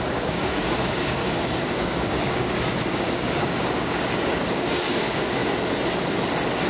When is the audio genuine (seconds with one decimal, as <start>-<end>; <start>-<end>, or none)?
5.4-6.7

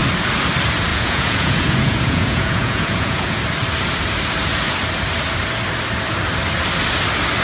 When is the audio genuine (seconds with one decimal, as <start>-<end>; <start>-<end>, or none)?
0.0-0.9; 3.4-7.4